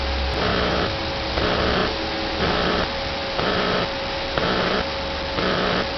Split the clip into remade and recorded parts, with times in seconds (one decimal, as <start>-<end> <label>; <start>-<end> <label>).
0.0-0.5 recorded; 0.5-1.0 remade; 1.0-6.0 recorded